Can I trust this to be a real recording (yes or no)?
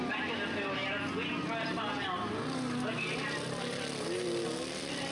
yes